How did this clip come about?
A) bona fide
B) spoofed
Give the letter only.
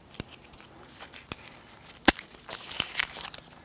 A